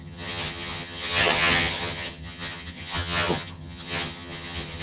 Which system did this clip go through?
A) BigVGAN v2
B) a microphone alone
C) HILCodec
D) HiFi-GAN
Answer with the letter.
D